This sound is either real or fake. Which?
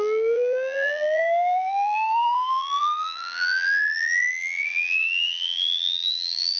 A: fake